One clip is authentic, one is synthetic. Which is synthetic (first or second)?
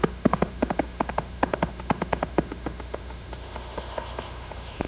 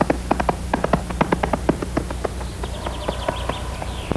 first